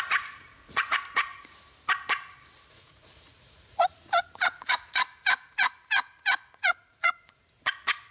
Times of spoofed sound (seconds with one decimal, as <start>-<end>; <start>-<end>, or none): 0.0-1.3; 2.7-8.1

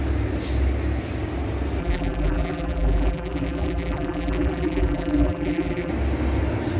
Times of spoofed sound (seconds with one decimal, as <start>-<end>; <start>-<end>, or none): 1.8-5.9

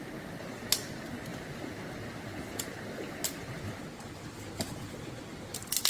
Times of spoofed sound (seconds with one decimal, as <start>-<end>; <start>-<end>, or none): none

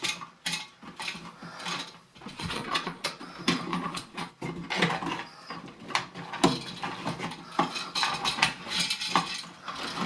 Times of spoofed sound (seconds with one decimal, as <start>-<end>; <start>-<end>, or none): 2.3-3.3; 3.7-4.3